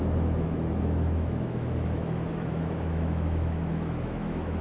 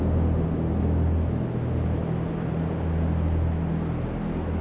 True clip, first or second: second